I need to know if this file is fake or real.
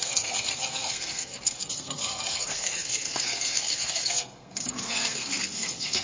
fake